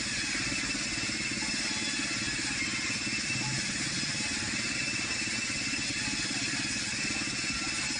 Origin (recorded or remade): recorded